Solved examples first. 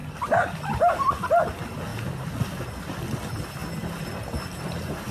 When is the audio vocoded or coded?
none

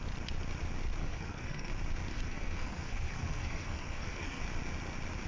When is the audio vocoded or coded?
1.0-1.7; 2.1-4.4

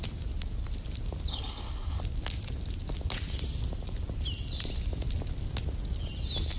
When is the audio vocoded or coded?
1.3-2.0

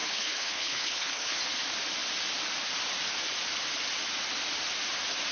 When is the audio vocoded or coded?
0.0-1.4

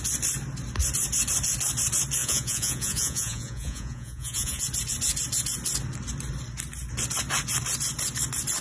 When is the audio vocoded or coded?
2.2-4.6